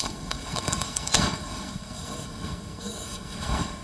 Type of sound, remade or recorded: remade